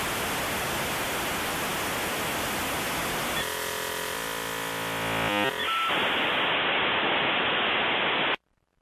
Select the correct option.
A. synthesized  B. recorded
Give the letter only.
B